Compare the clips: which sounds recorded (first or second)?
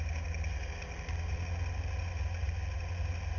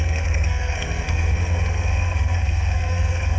first